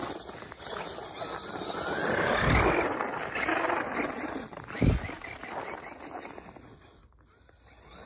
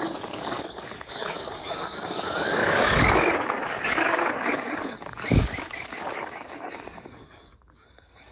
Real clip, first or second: first